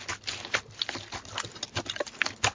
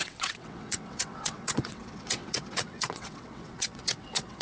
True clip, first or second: first